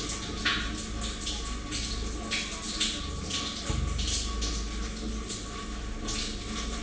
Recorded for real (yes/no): yes